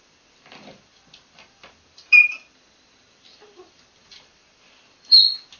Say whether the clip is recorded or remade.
remade